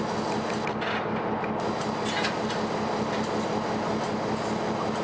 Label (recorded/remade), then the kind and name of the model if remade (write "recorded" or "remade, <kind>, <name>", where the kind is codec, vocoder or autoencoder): recorded